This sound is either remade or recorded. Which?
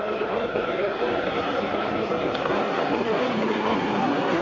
remade